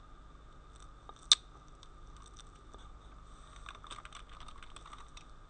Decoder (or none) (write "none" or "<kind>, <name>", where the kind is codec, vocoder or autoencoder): none